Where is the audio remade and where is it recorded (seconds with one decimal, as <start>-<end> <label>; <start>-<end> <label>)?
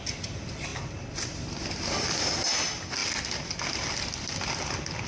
0.0-5.1 recorded